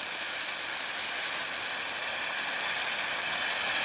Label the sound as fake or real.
real